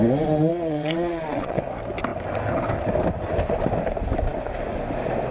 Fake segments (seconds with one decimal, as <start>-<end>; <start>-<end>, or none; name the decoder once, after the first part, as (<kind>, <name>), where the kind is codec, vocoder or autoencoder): 0.5-1.6 (vocoder, WaveNeXt)